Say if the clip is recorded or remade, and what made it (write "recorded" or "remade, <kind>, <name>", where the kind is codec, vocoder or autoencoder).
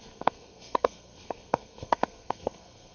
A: remade, codec, SNAC